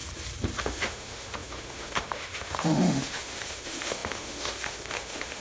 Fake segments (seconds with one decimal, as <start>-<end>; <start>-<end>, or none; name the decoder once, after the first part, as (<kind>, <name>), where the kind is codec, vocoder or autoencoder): 0.6-5.4 (autoencoder, DAC-VAE)